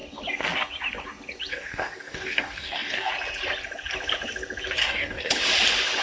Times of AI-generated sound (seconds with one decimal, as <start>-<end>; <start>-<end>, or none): 1.5-3.1; 4.8-5.3